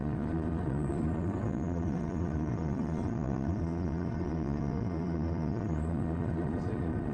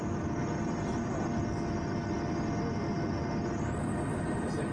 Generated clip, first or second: first